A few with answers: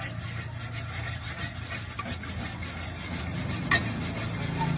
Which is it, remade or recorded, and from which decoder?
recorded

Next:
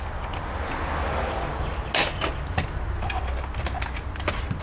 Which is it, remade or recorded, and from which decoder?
recorded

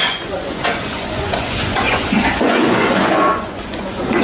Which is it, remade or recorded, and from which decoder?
remade, vocoder, Vocos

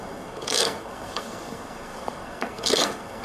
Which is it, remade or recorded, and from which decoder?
remade, codec, SNAC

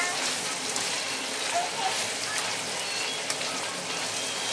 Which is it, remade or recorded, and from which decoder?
recorded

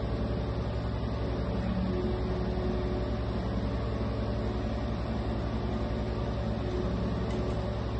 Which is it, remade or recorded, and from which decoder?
recorded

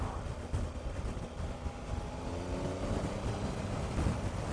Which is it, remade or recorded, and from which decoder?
recorded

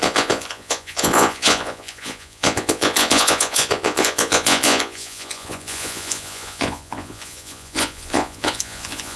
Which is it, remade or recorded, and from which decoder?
remade, vocoder, Vocos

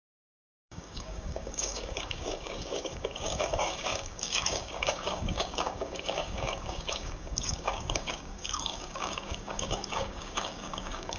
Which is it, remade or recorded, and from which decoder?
remade, codec, DAC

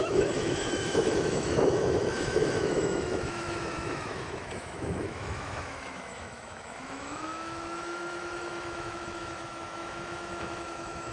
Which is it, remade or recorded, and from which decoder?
remade, autoencoder, DAC-VAE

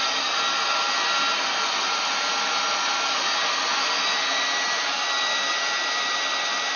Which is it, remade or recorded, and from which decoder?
recorded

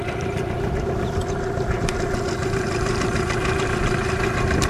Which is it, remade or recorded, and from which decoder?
recorded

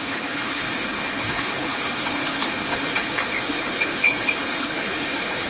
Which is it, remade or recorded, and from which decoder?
remade, codec, HILCodec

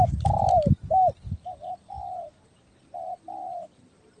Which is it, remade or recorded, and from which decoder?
recorded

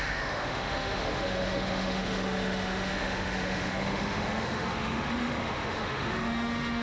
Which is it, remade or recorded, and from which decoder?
remade, autoencoder, DAC-VAE